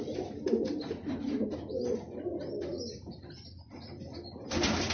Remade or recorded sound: recorded